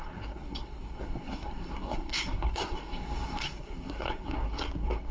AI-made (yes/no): yes